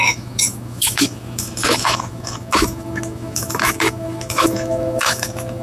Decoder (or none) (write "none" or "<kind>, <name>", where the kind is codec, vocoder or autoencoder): autoencoder, DAC-VAE